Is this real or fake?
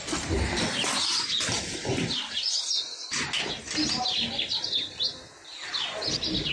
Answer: real